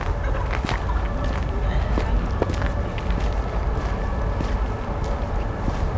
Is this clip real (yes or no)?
yes